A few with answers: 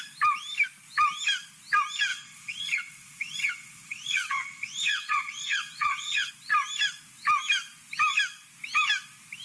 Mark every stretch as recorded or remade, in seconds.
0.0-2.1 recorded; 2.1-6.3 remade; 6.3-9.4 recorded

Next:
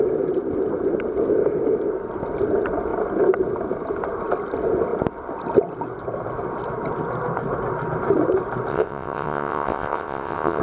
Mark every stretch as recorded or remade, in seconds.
0.0-8.7 recorded; 8.7-10.6 remade

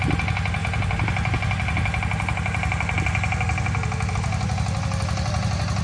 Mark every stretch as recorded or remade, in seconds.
0.0-5.8 recorded

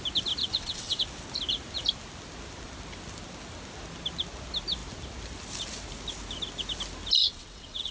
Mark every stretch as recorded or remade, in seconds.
0.0-0.4 recorded; 0.4-1.0 remade; 1.0-7.2 recorded; 7.2-7.9 remade

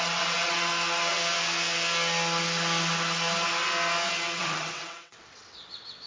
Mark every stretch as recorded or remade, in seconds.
0.0-0.7 remade; 0.7-4.4 recorded; 4.4-6.1 remade

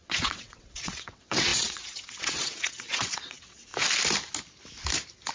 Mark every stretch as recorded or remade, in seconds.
0.0-3.7 remade; 3.7-5.3 recorded